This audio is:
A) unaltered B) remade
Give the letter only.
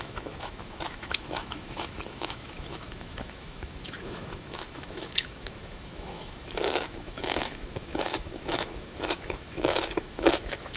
B